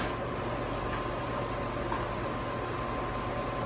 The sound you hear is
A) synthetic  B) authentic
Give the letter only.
B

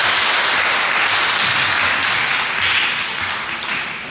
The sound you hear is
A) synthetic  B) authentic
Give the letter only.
B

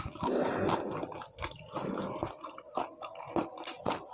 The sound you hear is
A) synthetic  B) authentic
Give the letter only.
B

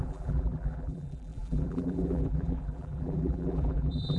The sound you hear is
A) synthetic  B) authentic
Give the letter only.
A